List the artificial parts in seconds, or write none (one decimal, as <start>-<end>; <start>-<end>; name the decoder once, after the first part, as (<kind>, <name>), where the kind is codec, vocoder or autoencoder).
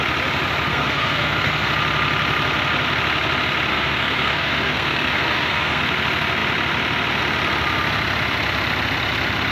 0.7-1.7 (codec, SNAC); 3.7-5.8